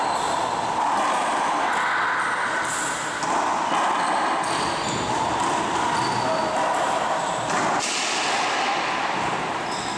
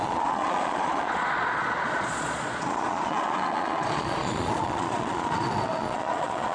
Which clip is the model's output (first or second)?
second